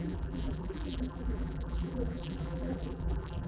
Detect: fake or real fake